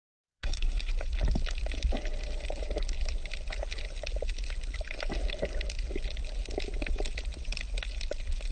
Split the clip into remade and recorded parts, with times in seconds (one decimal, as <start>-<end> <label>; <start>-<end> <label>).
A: 0.0-0.9 remade; 0.9-8.5 recorded